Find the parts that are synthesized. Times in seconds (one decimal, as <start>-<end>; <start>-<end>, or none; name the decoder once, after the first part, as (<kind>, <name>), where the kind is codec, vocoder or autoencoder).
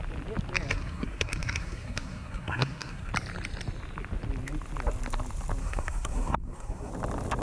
0.7-3.1 (codec, SNAC); 5.6-6.9